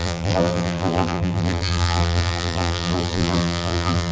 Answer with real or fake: fake